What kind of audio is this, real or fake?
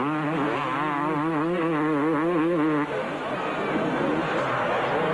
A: real